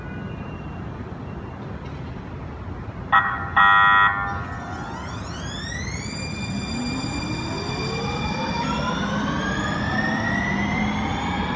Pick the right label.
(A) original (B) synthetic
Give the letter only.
A